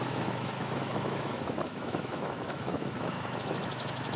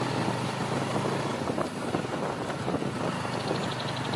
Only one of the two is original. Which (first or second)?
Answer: second